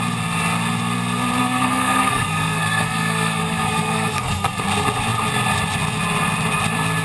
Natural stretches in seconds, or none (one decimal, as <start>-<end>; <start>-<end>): 0.0-1.4; 4.6-7.0